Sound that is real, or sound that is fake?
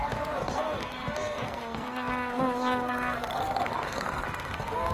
fake